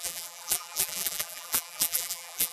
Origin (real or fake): fake